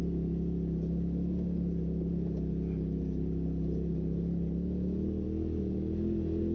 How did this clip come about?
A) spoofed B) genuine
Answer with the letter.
B